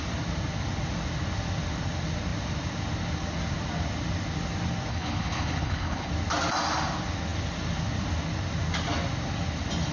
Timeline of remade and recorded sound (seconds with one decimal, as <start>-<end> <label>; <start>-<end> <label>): 0.0-4.9 recorded; 4.9-6.1 remade; 6.1-9.9 recorded